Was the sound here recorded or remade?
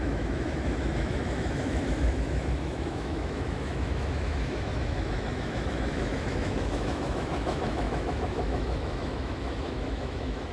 remade